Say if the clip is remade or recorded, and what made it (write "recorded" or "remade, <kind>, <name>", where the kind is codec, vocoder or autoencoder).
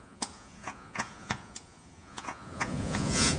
remade, vocoder, Vocos